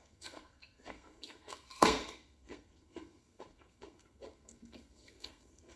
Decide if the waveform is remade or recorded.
remade